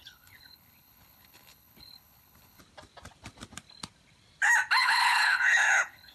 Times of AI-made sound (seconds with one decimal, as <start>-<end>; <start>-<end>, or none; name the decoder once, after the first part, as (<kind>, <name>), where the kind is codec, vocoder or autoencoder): 0.0-2.6 (codec, HILCodec); 4.8-6.1